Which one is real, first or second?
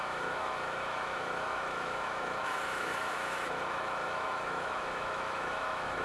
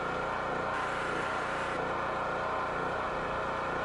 second